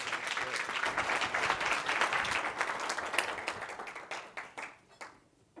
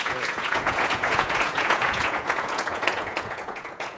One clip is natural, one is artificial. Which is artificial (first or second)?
second